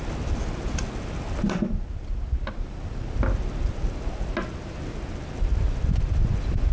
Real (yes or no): yes